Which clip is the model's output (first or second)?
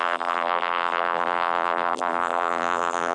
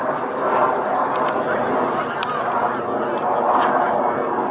first